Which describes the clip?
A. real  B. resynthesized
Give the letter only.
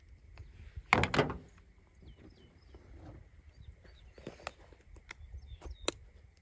A